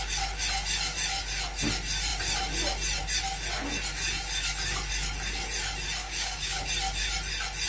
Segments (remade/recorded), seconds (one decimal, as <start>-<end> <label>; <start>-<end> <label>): 0.0-6.0 recorded; 6.0-6.6 remade; 6.6-7.7 recorded